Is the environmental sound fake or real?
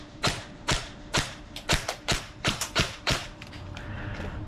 fake